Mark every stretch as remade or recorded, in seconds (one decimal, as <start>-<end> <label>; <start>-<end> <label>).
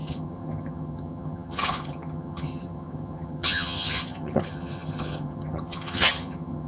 0.0-6.7 remade